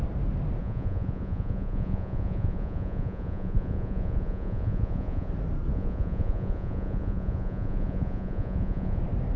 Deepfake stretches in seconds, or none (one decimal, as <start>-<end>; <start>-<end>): 0.6-5.3; 5.7-9.0